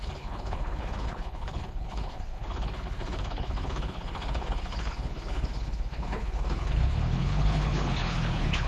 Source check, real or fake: fake